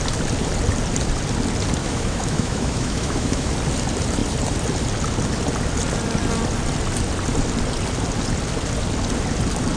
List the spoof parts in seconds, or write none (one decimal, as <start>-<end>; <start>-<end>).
1.8-3.5